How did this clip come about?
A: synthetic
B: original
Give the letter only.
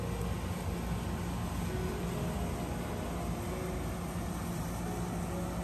B